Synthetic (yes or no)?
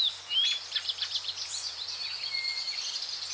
no